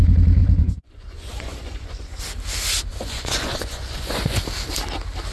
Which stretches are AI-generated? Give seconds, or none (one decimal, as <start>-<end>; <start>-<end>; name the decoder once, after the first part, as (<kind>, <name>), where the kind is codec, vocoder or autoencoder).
0.4-2.2 (vocoder, Vocos); 2.9-4.4